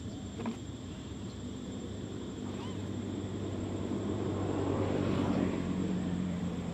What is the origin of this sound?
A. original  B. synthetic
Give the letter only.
B